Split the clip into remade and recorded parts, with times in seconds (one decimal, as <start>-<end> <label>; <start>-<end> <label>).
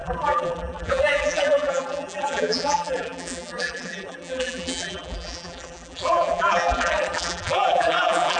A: 0.0-8.4 remade